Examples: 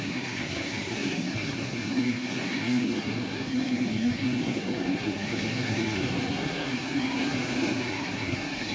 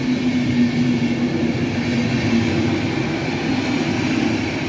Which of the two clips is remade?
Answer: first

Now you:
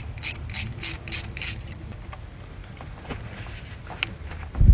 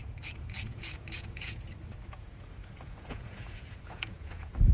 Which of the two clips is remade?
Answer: second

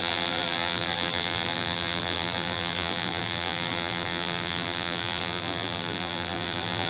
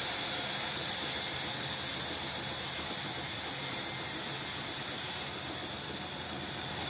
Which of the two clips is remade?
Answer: first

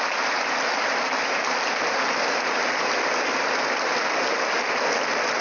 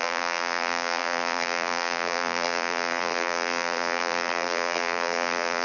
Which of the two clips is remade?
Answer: second